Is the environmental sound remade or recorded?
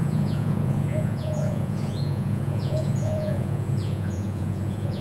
remade